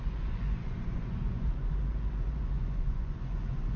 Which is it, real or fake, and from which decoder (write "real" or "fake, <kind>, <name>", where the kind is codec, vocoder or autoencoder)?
fake, vocoder, Vocos